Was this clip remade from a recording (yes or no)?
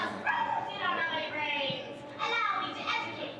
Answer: yes